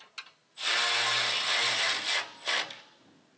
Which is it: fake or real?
real